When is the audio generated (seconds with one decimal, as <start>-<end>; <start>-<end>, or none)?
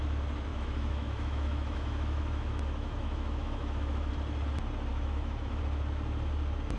0.5-4.1; 4.9-5.6